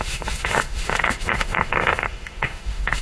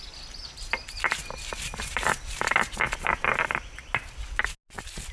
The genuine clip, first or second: second